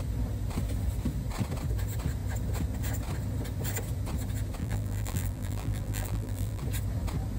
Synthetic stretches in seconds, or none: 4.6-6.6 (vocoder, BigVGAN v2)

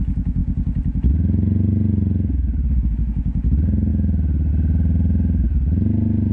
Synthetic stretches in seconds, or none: 0.4-1.1 (vocoder, BigVGAN v2)

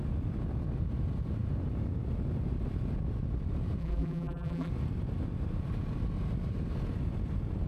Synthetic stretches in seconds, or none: 3.8-4.7 (vocoder, BigVGAN v2)

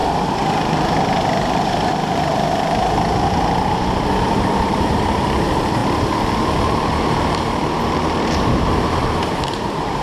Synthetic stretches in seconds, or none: 4.3-5.8 (vocoder, BigVGAN v2); 6.9-10.0

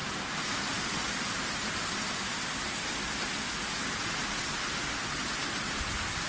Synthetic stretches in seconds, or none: 0.0-2.7 (vocoder, BigVGAN v2)